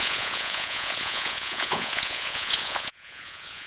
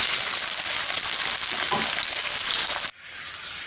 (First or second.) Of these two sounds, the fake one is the first